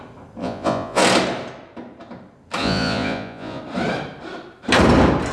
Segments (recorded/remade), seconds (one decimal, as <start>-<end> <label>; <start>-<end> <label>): 0.0-0.4 recorded; 0.4-1.0 remade; 1.0-2.6 recorded; 2.6-3.6 remade; 3.6-5.3 recorded